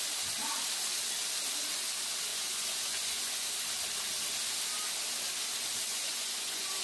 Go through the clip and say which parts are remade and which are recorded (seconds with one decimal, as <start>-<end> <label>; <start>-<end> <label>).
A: 0.0-2.3 recorded; 2.3-3.5 remade; 3.5-5.9 recorded; 5.9-6.8 remade